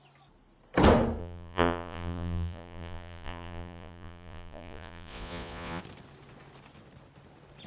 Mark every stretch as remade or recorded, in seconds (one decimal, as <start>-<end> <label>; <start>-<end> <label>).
0.0-1.2 recorded; 1.2-5.8 remade; 5.8-7.7 recorded

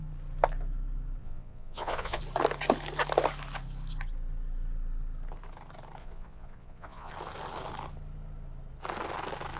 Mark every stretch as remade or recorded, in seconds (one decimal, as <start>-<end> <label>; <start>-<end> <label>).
0.0-1.2 recorded; 1.2-2.2 remade; 2.2-6.0 recorded; 6.0-7.1 remade; 7.1-9.6 recorded

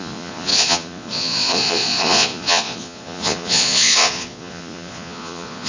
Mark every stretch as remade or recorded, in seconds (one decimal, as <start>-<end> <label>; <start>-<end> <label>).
0.0-5.7 remade

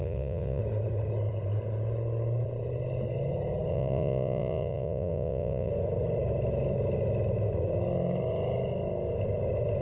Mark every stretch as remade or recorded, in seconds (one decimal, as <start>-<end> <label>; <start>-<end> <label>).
0.0-0.6 remade; 0.6-3.7 recorded; 3.7-5.7 remade; 5.7-9.8 recorded

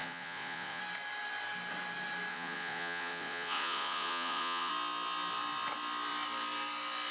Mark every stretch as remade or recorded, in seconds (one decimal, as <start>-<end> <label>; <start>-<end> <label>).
0.0-0.8 remade; 0.8-2.3 recorded; 2.3-4.7 remade; 4.7-7.1 recorded

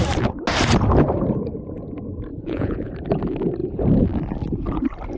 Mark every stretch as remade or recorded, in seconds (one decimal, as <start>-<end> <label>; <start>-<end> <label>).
0.0-2.3 recorded; 2.3-2.9 remade; 2.9-5.2 recorded

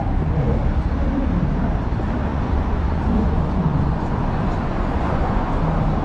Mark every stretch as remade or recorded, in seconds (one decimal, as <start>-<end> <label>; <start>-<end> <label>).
0.0-2.3 recorded; 2.3-5.6 remade; 5.6-6.0 recorded

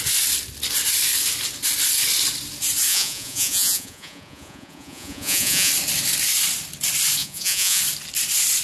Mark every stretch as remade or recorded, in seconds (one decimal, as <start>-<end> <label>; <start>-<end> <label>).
0.0-2.9 recorded; 2.9-5.7 remade; 5.7-7.2 recorded; 7.2-7.8 remade; 7.8-8.6 recorded